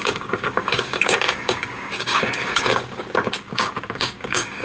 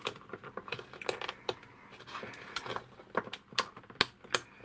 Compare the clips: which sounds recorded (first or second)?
second